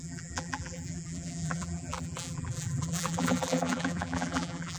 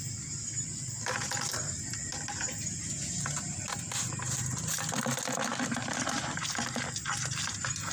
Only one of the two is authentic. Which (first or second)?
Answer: second